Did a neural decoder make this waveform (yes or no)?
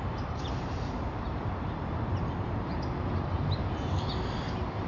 no